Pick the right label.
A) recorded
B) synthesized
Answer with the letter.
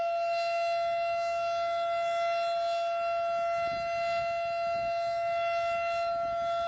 A